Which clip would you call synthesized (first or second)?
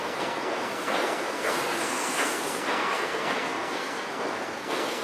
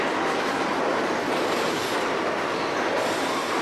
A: first